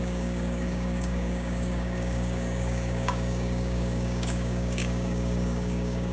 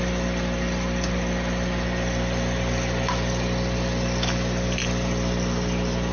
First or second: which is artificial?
first